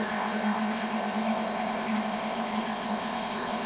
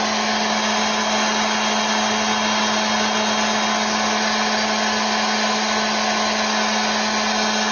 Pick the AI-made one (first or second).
first